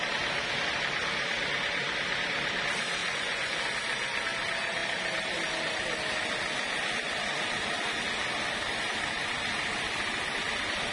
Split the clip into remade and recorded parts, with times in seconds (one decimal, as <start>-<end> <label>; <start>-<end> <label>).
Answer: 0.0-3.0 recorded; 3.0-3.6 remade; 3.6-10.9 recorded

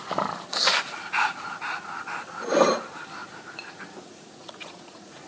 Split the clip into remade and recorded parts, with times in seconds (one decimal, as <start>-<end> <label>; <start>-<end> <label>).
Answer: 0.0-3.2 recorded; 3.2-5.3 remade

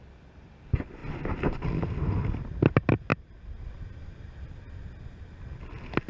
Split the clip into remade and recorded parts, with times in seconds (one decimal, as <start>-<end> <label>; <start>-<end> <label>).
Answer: 0.0-6.1 recorded